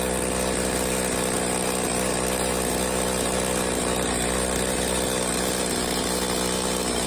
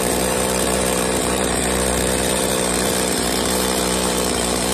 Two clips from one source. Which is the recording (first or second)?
first